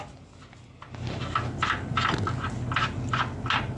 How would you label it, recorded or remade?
recorded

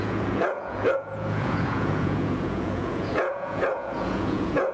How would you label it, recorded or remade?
remade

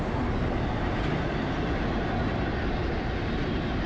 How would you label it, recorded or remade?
recorded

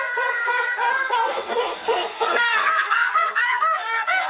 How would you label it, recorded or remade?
remade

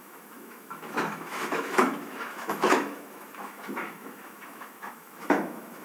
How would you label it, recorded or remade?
remade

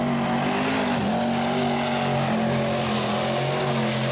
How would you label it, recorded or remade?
recorded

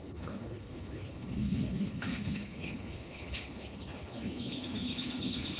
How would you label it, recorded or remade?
remade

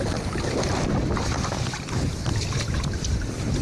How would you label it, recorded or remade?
recorded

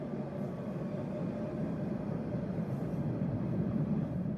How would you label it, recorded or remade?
recorded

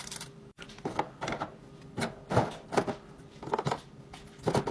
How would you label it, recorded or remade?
recorded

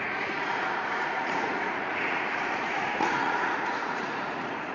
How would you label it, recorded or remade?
remade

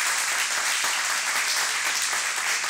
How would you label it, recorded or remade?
recorded